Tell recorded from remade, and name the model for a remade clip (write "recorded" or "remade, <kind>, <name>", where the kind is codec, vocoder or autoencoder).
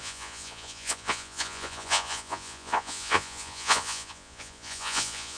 remade, vocoder, Vocos